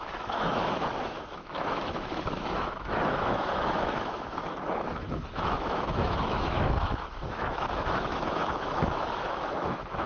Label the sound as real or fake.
fake